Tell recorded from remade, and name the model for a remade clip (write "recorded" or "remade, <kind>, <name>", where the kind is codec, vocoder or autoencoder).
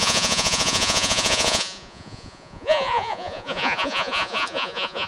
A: remade, vocoder, Vocos